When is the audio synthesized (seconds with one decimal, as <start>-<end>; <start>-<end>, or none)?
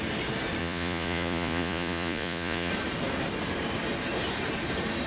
0.6-2.7